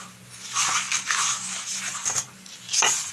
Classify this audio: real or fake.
real